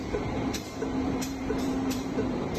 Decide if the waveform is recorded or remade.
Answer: remade